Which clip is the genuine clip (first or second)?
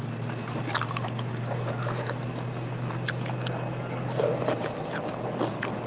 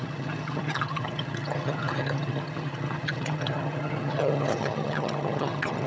first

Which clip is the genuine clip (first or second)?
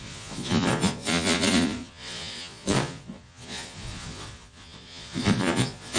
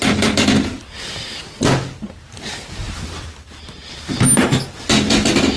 second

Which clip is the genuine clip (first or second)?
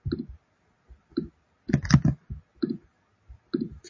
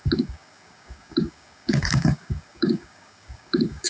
first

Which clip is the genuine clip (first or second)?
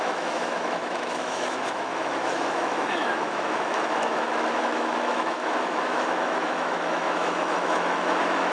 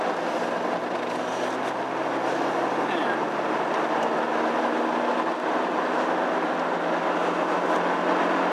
second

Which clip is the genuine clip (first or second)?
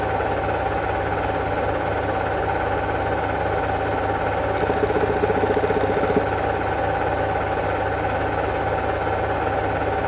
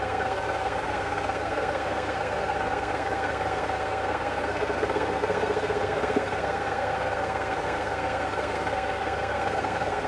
first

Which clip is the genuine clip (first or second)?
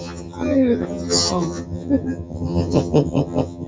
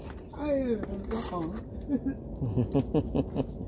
second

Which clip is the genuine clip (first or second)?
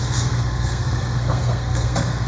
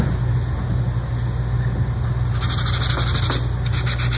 second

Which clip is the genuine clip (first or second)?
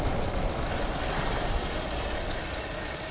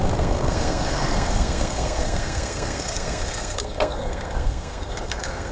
first